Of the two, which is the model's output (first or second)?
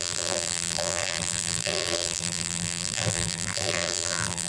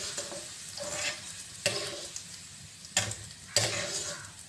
first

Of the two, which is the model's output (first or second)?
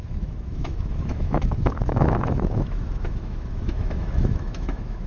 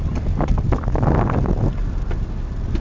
first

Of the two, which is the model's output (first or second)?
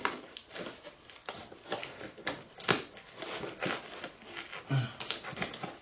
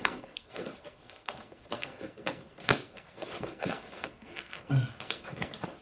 second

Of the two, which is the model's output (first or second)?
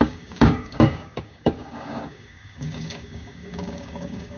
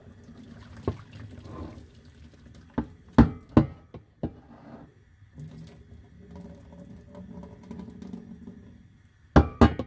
first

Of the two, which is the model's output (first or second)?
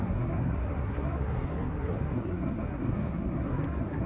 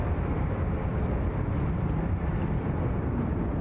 first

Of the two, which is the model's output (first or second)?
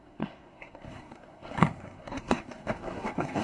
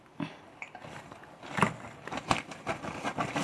first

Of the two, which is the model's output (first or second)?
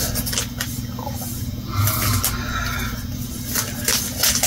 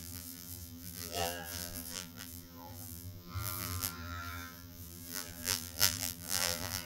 second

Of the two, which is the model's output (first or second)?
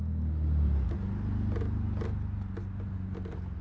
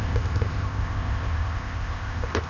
second